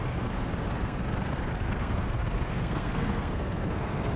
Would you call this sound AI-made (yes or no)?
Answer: yes